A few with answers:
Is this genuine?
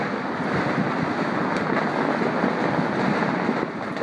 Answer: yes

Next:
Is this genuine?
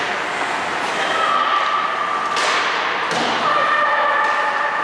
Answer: yes